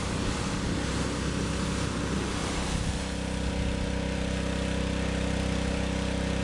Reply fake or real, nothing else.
real